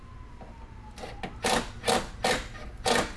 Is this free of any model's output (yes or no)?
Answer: yes